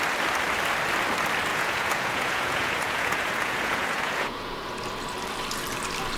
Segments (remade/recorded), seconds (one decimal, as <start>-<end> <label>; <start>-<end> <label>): 0.0-1.5 recorded; 1.5-4.7 remade; 4.7-6.2 recorded